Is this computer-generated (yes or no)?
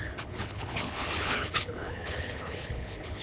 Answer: yes